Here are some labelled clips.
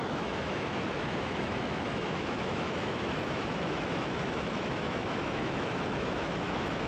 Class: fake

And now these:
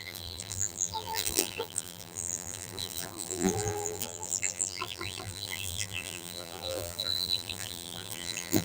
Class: fake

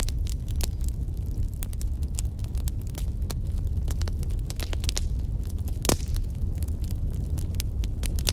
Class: real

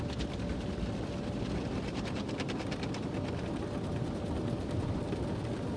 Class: real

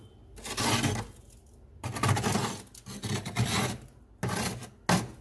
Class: real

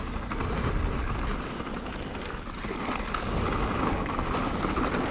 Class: real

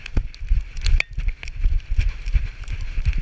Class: fake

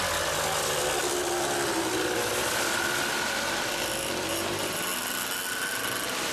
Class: real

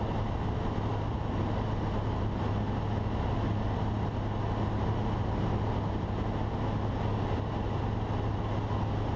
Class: real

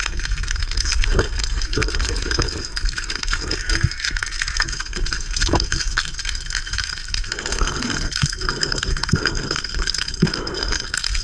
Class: fake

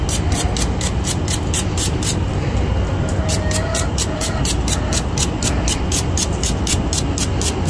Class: real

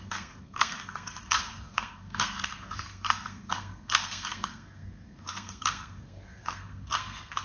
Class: fake